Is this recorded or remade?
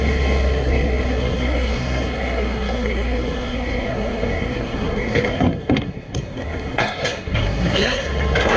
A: remade